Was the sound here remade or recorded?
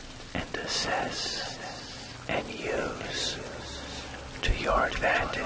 recorded